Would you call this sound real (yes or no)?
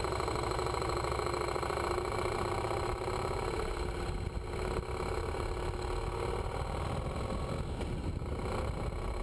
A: yes